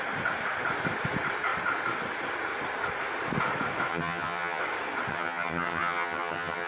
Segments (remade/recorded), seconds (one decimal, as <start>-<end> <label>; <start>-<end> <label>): 0.0-3.9 recorded; 3.9-4.6 remade; 4.6-5.1 recorded; 5.1-6.7 remade

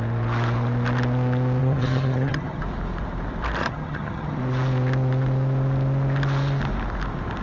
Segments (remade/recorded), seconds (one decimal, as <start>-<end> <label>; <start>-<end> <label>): 0.0-1.6 recorded; 1.6-2.6 remade; 2.6-3.6 recorded; 3.6-4.4 remade; 4.4-7.4 recorded

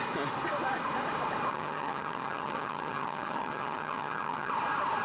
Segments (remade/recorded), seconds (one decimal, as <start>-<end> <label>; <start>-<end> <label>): 0.0-1.5 recorded; 1.5-4.5 remade; 4.5-5.0 recorded

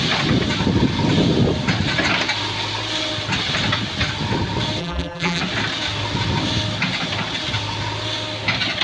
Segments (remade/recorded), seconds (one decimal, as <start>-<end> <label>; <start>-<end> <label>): 0.0-4.8 recorded; 4.8-5.4 remade; 5.4-8.8 recorded

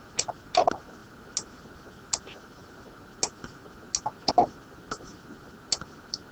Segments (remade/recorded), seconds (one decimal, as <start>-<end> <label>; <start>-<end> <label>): 0.0-6.3 recorded

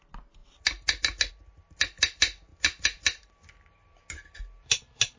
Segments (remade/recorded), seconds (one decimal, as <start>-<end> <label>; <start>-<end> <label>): 0.0-5.2 recorded